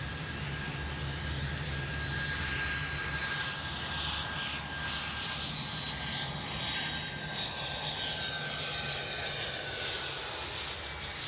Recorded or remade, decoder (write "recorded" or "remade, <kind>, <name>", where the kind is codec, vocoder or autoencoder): recorded